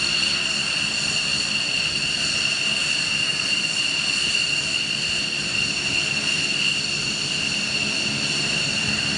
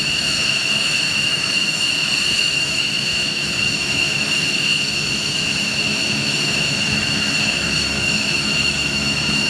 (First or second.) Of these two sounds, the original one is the first